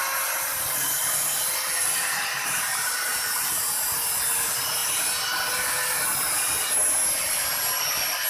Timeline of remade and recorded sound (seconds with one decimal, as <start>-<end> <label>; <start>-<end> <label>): 0.0-0.5 recorded; 0.5-3.4 remade; 3.4-8.3 recorded